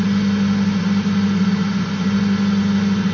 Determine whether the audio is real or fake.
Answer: real